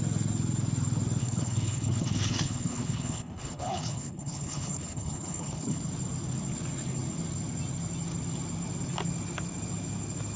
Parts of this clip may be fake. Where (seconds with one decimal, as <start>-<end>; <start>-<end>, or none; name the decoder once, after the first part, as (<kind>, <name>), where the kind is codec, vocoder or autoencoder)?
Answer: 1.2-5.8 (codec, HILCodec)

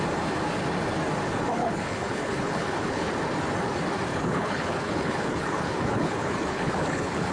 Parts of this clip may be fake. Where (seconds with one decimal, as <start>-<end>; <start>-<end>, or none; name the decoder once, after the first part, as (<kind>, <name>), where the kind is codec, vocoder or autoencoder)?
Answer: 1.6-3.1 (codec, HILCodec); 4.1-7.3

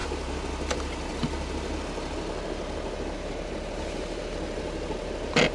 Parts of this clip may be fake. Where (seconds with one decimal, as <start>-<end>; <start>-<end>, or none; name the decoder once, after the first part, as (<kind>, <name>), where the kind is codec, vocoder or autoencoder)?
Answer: none

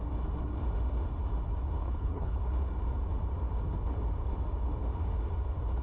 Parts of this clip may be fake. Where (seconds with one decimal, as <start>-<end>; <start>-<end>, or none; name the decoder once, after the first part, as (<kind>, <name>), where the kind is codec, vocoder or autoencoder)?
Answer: 1.8-2.4 (codec, HILCodec)